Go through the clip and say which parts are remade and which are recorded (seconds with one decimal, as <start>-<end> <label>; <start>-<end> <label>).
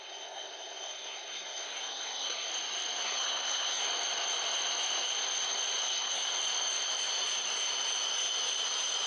0.0-2.5 remade; 2.5-3.0 recorded; 3.0-3.8 remade; 3.8-5.8 recorded; 5.8-6.3 remade; 6.3-9.1 recorded